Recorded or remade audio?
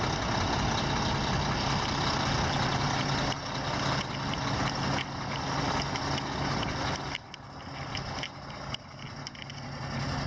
recorded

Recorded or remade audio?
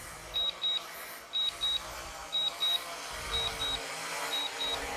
recorded